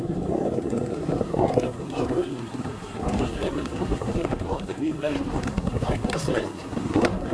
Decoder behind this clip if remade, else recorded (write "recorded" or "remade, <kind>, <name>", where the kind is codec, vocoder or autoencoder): remade, codec, SNAC